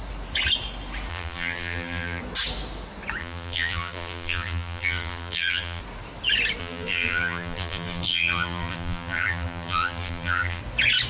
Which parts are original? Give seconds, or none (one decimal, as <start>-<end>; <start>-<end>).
0.0-1.1; 2.2-3.2; 5.8-6.6; 10.6-11.1